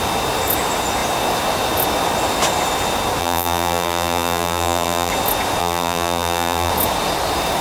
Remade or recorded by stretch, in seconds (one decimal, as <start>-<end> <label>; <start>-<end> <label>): 0.0-3.2 recorded; 3.2-5.1 remade; 5.1-5.6 recorded; 5.6-6.7 remade; 6.7-7.6 recorded